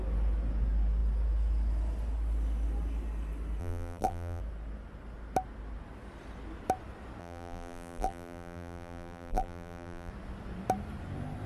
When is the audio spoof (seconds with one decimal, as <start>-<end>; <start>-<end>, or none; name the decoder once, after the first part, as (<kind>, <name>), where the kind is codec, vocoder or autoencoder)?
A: 3.6-4.4 (vocoder, BigVGAN v2); 7.2-10.1